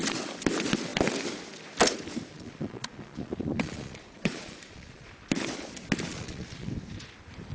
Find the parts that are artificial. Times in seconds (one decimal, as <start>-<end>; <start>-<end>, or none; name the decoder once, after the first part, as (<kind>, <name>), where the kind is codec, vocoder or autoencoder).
2.3-5.1 (vocoder, Vocos); 6.1-6.7